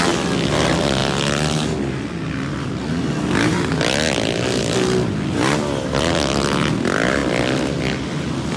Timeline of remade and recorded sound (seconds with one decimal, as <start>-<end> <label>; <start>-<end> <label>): 0.0-8.6 recorded